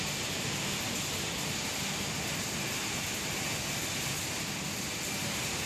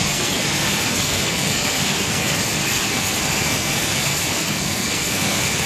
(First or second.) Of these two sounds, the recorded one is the first